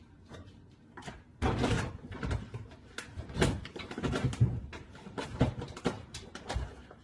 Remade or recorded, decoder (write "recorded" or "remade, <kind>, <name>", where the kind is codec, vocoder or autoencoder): remade, vocoder, BigVGAN v2